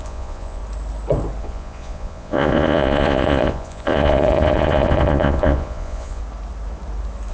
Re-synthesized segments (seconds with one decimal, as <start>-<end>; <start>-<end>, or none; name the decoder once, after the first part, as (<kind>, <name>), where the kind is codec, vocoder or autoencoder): 0.0-0.6 (vocoder, Vocos); 1.4-6.2